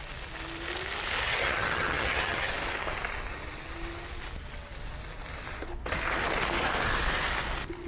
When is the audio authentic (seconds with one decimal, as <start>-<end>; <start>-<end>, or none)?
0.0-1.2; 2.5-7.9